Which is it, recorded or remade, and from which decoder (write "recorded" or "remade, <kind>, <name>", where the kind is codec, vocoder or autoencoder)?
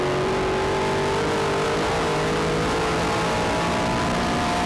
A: recorded